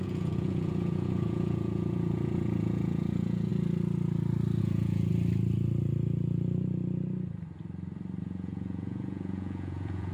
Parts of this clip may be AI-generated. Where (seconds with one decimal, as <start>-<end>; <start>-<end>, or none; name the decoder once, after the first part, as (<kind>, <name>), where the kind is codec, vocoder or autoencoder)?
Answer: 0.0-3.5 (vocoder, Vocos); 4.6-5.1; 8.2-10.1